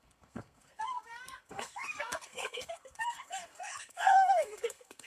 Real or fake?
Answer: fake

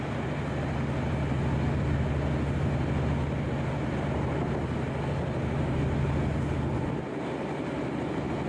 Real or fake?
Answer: real